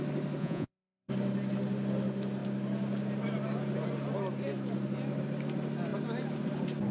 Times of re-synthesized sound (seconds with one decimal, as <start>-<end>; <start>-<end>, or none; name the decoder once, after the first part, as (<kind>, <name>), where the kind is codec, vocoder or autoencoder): 0.4-1.1 (vocoder, Vocos)

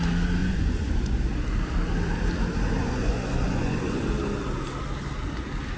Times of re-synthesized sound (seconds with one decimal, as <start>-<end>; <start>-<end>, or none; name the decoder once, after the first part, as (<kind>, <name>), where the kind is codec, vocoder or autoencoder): 0.4-1.0 (vocoder, Vocos); 2.8-4.0

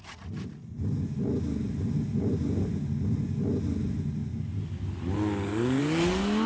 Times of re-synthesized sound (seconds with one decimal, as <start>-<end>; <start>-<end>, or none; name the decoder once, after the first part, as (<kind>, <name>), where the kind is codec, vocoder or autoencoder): none

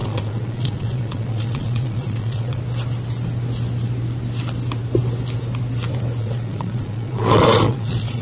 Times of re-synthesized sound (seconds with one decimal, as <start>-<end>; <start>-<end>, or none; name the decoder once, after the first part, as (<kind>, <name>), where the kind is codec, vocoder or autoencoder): 0.0-2.6 (vocoder, Vocos); 6.2-8.2

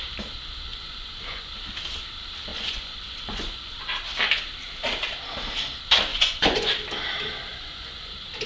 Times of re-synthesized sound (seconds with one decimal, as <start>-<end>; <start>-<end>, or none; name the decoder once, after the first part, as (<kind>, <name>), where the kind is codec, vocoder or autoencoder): 0.7-1.5 (vocoder, Vocos); 2.5-3.8; 6.1-6.7; 7.5-8.1

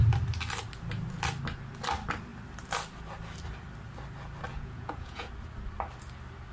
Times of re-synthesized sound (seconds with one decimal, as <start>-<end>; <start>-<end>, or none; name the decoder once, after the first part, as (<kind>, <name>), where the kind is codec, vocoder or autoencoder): 4.5-5.3 (vocoder, Vocos)